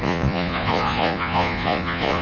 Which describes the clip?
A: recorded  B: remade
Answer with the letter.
B